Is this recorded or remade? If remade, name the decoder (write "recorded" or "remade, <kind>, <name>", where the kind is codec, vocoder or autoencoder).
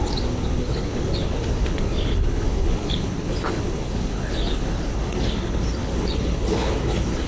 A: remade, codec, HILCodec